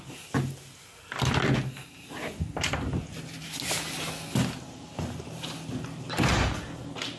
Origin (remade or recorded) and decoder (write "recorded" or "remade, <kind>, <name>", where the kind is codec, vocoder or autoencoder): recorded